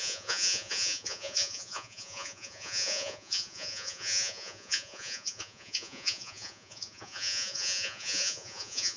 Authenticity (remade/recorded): remade